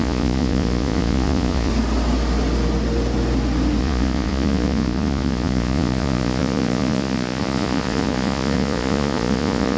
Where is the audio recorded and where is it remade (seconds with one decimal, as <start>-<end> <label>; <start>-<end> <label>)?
0.0-1.7 remade; 1.7-3.8 recorded; 3.8-9.8 remade